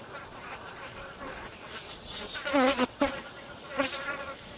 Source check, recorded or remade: remade